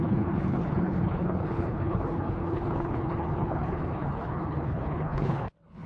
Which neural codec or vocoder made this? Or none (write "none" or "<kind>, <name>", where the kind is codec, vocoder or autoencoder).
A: codec, HILCodec